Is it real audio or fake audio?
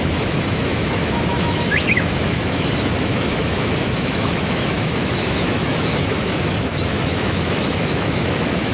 fake